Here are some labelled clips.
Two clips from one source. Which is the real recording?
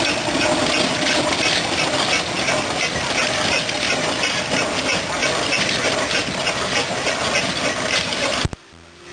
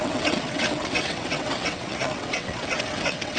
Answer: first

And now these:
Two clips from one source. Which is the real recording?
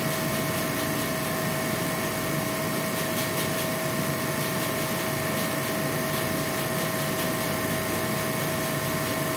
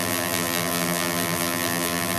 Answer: first